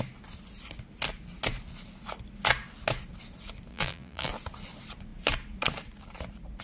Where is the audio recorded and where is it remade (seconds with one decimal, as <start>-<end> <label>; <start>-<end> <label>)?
0.0-3.7 recorded; 3.7-4.3 remade; 4.3-6.6 recorded